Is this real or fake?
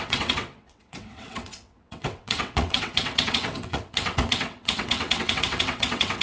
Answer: fake